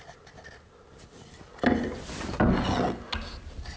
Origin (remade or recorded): recorded